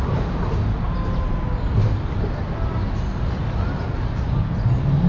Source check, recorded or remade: recorded